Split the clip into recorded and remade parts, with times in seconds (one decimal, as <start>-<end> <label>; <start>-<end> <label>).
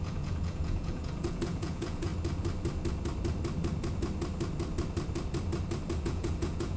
0.0-2.1 remade; 2.1-6.0 recorded; 6.0-6.8 remade